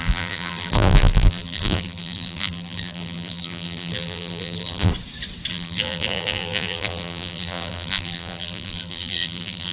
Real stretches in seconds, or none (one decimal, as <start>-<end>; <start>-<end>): 4.9-5.5